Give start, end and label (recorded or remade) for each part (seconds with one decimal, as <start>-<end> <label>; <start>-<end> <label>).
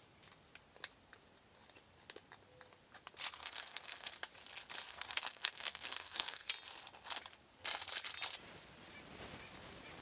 0.0-3.4 recorded; 3.4-4.1 remade; 4.1-4.9 recorded; 4.9-6.5 remade; 6.5-10.0 recorded